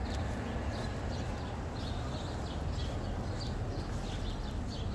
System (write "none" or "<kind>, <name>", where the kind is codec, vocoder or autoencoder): none